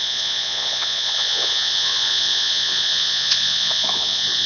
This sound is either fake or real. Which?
fake